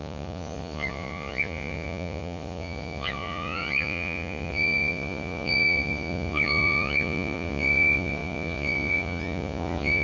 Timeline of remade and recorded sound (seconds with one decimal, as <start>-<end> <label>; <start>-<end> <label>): 0.0-10.0 remade